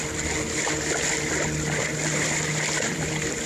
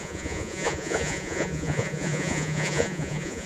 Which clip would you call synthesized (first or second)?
second